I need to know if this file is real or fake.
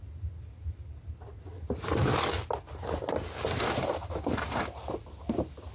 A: real